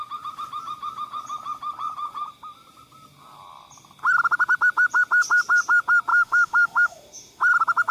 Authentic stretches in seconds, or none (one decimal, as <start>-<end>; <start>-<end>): 0.0-6.1; 7.4-7.9